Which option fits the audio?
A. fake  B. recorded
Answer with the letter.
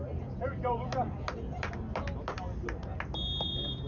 B